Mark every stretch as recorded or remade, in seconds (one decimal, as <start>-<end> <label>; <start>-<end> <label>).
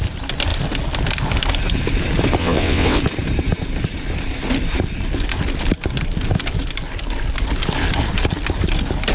0.0-2.4 recorded; 2.4-3.0 remade; 3.0-9.1 recorded